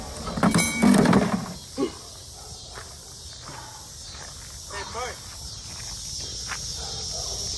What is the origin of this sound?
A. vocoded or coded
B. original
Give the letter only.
B